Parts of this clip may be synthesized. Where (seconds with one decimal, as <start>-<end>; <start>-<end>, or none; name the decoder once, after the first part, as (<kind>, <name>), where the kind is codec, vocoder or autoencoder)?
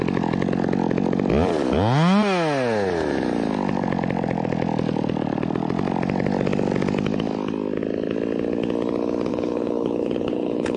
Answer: 9.3-10.8 (codec, HILCodec)